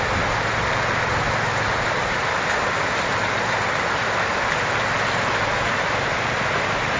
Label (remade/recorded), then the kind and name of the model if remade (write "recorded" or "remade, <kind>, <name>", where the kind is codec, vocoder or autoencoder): recorded